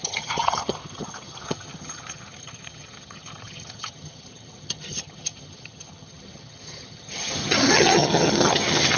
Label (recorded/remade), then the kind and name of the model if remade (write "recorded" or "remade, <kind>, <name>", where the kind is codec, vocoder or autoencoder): remade, vocoder, HiFi-GAN